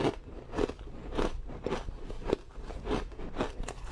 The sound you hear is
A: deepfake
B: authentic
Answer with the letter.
A